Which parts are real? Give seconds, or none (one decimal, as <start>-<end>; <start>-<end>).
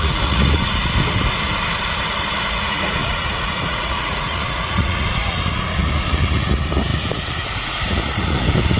0.7-2.5